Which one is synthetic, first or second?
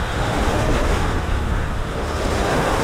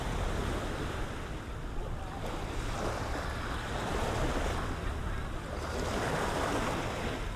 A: first